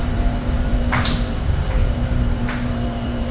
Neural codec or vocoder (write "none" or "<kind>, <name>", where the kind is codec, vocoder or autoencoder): vocoder, BigVGAN v2